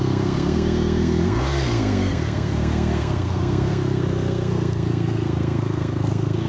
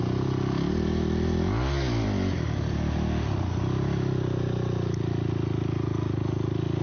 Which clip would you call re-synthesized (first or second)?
first